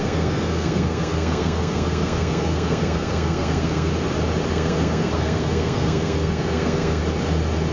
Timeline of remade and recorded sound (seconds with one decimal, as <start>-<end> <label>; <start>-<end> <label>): 0.0-3.9 remade; 3.9-4.5 recorded; 4.5-7.0 remade; 7.0-7.7 recorded